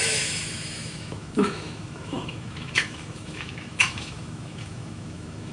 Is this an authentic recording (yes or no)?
no